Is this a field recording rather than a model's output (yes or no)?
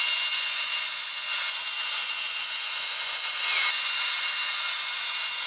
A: no